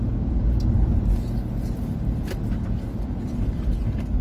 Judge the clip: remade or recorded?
recorded